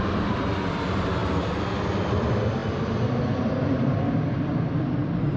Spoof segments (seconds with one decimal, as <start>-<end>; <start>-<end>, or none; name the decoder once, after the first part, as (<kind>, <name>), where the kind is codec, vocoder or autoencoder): 0.0-1.2 (vocoder, BigVGAN v2); 2.0-5.4